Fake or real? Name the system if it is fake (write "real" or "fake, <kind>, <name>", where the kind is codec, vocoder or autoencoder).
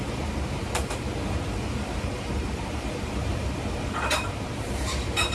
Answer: fake, vocoder, BigVGAN v2